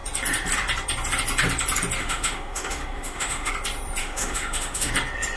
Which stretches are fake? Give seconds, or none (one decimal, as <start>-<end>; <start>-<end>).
2.0-3.5; 4.0-4.9